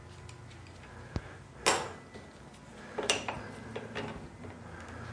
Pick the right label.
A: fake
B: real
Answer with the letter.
B